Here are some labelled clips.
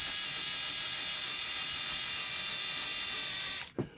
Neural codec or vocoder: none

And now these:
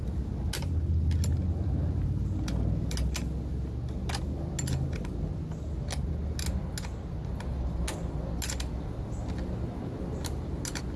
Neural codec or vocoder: none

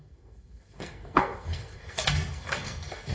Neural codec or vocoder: codec, SNAC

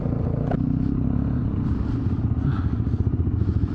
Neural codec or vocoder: none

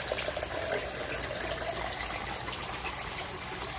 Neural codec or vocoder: none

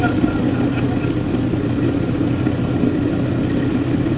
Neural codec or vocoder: none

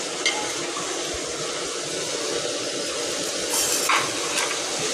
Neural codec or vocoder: none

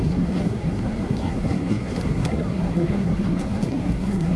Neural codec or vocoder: codec, SNAC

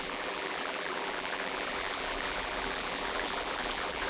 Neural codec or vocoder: vocoder, BigVGAN v2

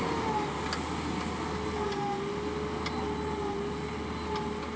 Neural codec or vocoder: none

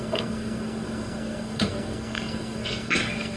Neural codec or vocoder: codec, SNAC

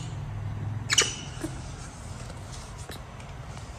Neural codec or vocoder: none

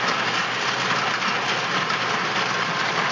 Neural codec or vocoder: none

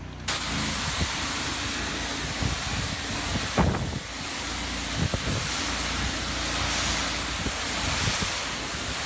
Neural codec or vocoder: none